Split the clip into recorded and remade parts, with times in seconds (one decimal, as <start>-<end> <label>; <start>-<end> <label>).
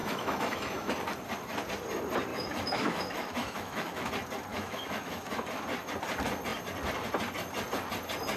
0.0-0.9 remade; 0.9-2.3 recorded; 2.3-4.1 remade; 4.1-4.5 recorded; 4.5-5.3 remade; 5.3-8.4 recorded